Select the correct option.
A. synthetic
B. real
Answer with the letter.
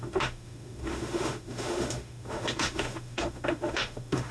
A